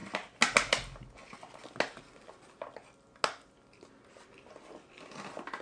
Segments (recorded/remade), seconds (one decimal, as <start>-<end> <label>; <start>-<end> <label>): 0.0-5.6 recorded